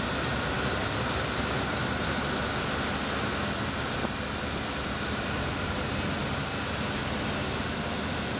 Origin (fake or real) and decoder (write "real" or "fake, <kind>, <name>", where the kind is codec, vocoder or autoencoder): real